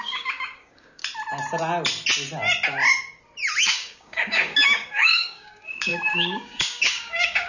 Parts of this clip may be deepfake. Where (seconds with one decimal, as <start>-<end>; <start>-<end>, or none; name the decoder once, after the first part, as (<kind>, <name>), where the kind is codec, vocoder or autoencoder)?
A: 0.0-1.0 (codec, DAC); 3.6-7.5